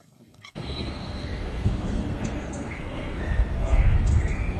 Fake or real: fake